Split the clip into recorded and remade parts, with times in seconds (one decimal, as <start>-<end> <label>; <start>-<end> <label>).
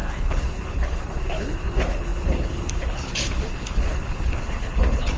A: 0.0-5.2 remade